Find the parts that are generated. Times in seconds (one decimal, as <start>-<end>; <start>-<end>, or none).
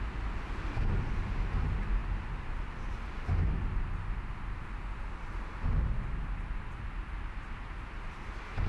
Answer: none